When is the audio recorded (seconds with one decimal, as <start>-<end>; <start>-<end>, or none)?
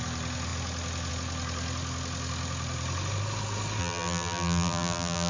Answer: 0.0-3.8